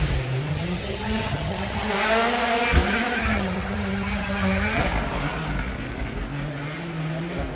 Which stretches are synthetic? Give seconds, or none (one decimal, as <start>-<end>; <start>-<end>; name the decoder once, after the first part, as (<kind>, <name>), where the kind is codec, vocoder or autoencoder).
0.5-1.9 (vocoder, HiFi-GAN); 3.2-4.8